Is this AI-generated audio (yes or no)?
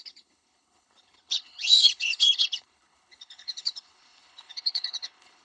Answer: yes